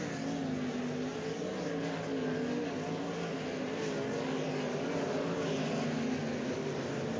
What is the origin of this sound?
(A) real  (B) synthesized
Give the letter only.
A